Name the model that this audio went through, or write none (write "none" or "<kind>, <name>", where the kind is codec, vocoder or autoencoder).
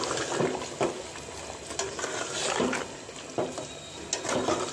none